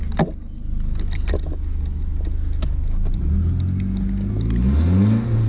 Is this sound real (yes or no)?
yes